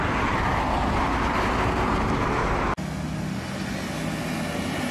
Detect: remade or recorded recorded